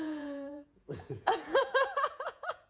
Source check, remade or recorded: remade